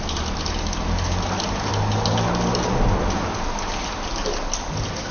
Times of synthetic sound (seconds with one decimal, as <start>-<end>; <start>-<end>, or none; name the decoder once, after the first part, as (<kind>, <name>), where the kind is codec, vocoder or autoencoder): none